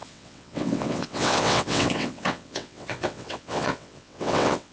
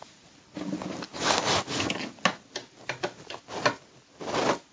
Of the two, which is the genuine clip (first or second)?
second